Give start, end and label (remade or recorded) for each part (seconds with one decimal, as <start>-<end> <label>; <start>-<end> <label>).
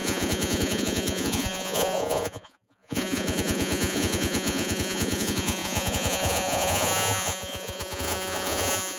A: 0.0-9.0 remade